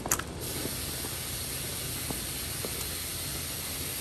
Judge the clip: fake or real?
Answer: real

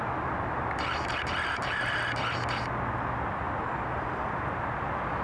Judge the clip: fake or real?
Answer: real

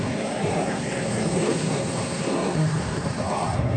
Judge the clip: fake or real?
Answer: fake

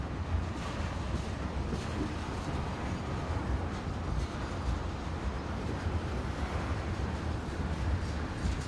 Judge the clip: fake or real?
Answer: real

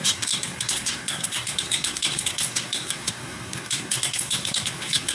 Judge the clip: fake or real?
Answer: fake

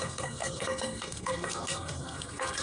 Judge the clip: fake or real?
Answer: fake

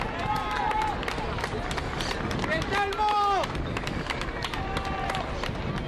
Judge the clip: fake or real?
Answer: real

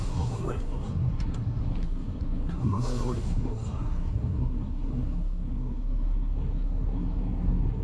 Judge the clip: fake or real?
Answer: fake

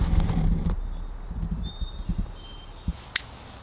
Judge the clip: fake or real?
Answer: real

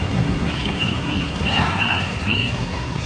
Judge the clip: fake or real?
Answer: fake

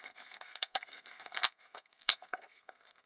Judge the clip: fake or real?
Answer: fake